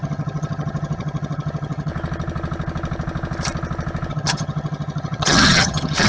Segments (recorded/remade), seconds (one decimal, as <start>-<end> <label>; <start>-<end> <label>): 0.0-1.9 remade; 1.9-4.1 recorded; 4.1-6.1 remade